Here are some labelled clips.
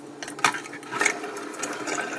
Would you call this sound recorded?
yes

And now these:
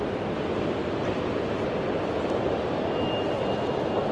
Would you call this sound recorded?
yes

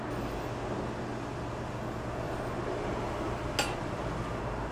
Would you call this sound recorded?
yes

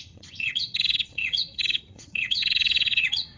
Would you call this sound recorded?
no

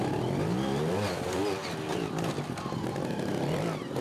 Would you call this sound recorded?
yes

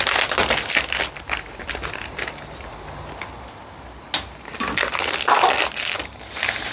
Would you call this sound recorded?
yes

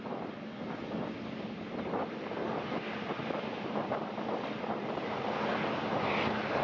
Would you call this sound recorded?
yes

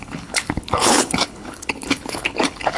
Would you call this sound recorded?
no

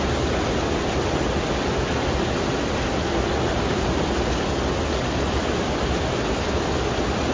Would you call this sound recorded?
yes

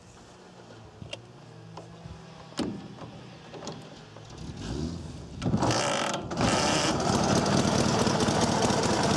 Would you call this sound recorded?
yes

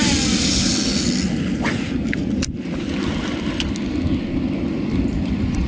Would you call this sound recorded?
yes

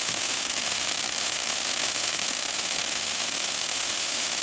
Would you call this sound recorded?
no